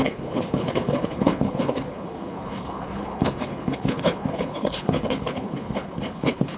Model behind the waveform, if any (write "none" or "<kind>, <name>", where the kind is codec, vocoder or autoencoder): codec, HILCodec